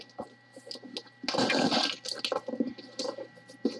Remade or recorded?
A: recorded